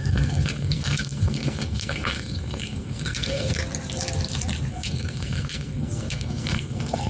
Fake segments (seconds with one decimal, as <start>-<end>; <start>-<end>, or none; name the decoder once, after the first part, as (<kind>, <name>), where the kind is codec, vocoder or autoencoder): 0.0-3.6 (codec, SNAC); 4.7-7.1